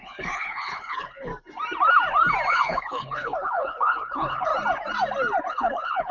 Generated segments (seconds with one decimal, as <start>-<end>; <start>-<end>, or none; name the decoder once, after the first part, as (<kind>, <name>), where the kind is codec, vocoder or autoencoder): 0.0-1.3 (codec, HILCodec); 2.5-4.5; 5.5-6.1